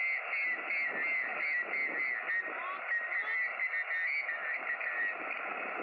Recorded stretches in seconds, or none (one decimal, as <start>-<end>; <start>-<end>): 0.0-5.8